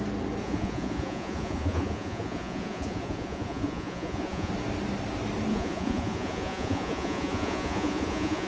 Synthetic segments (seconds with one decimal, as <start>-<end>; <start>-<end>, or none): 0.4-4.5; 5.5-8.5